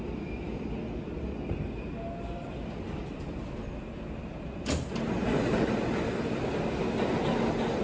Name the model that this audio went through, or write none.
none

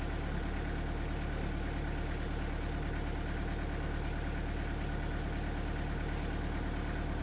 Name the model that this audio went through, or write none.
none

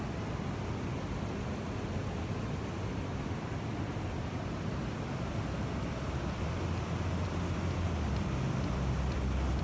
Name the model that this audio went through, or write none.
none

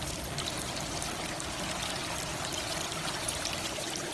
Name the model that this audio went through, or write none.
none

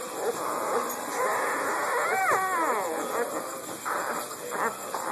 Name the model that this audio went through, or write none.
none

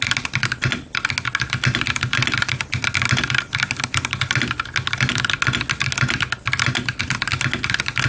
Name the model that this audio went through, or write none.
none